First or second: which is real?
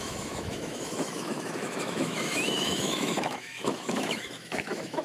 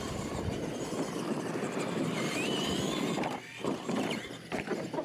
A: second